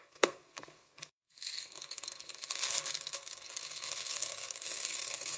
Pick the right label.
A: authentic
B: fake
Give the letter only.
B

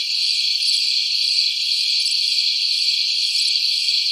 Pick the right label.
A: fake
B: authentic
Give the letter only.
B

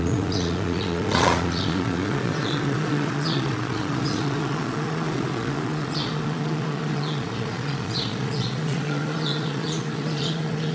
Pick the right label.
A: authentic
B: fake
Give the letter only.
B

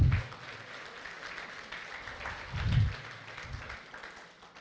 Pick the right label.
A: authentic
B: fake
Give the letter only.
A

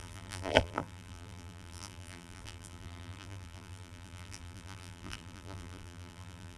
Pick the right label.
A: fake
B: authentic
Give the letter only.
A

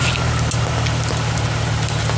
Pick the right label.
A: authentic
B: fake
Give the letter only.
A